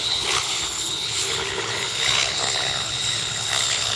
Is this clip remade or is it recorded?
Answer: remade